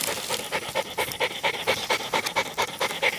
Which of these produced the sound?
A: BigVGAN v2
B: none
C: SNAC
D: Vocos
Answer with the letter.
B